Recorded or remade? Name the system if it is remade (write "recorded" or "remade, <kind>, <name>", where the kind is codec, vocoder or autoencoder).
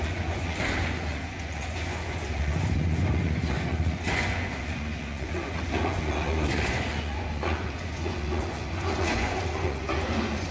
remade, vocoder, Vocos